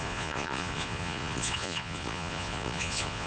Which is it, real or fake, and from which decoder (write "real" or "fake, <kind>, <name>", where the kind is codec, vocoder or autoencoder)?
fake, vocoder, Vocos